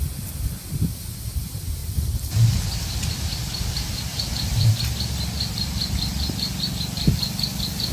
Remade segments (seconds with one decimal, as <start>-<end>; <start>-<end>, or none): 1.8-2.9; 4.1-4.7